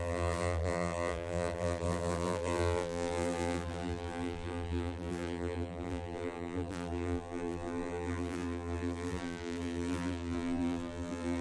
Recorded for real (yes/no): no